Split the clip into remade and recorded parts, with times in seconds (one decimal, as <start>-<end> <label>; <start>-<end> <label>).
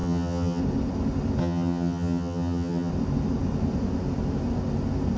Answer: 0.0-0.6 remade; 0.6-1.4 recorded; 1.4-2.9 remade; 2.9-5.2 recorded